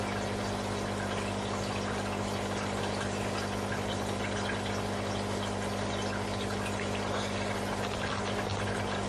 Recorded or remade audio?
recorded